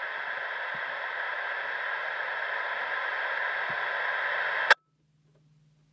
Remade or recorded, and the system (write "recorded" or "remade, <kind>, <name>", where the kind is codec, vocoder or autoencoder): recorded